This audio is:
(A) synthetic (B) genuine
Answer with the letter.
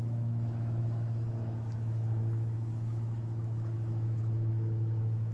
A